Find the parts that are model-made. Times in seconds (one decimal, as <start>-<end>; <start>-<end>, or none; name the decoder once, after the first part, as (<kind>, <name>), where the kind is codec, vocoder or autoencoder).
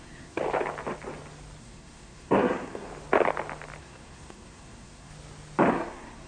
0.0-0.4 (codec, SNAC); 1.6-2.9; 3.8-5.1; 5.7-6.3